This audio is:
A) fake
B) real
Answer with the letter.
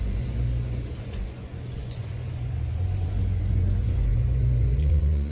A